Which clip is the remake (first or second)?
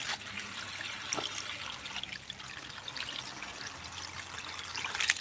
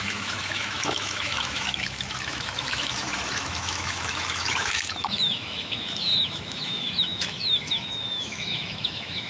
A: second